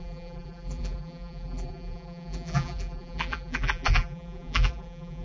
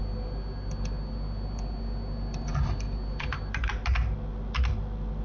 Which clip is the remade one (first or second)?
first